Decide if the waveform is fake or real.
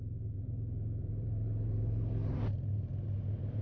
fake